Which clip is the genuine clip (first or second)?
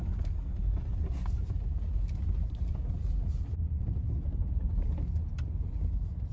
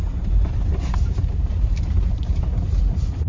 first